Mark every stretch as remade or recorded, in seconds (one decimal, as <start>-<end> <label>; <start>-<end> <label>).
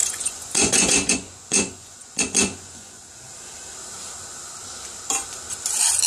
0.0-3.0 remade; 3.0-6.1 recorded